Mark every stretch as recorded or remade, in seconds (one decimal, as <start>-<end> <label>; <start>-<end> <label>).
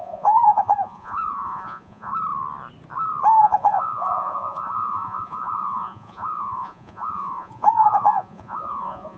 0.0-2.1 remade; 2.1-3.4 recorded; 3.4-9.2 remade